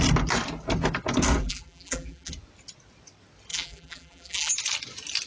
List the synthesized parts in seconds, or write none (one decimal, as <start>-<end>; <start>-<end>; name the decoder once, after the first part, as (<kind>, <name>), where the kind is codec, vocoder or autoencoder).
1.4-2.3 (vocoder, BigVGAN v2); 3.5-4.5